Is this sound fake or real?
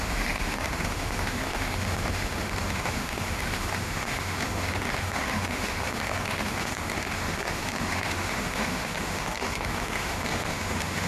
fake